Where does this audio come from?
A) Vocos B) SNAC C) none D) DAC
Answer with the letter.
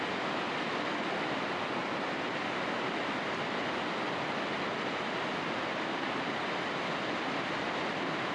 C